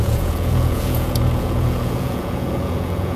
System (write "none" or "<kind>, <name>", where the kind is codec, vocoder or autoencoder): vocoder, Vocos